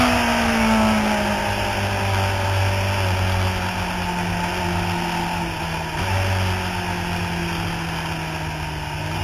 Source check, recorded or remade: recorded